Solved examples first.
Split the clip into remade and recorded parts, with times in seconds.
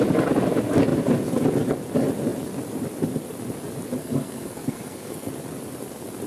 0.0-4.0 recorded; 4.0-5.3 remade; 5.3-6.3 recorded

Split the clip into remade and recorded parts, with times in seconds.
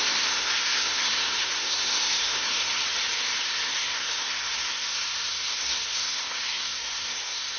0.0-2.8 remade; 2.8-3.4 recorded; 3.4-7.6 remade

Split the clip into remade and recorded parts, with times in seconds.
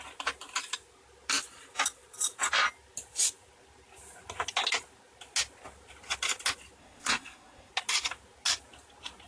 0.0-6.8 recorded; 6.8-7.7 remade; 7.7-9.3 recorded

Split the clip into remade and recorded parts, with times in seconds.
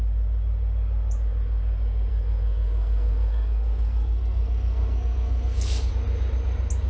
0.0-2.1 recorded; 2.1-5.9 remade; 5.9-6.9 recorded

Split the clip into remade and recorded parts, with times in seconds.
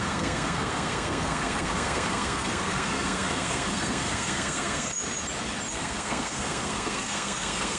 0.0-4.9 remade; 4.9-5.7 recorded; 5.7-7.8 remade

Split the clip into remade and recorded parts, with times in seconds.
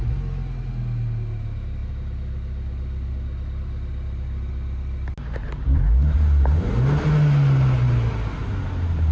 0.0-9.1 recorded